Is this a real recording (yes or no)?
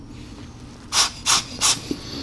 yes